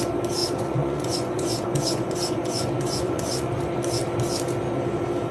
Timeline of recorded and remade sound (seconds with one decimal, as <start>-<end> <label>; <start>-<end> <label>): 0.0-0.4 recorded; 0.4-3.6 remade; 3.6-5.3 recorded